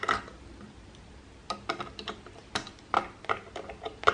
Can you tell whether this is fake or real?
real